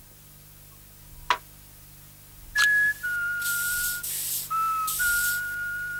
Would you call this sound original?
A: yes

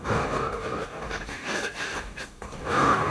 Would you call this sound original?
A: no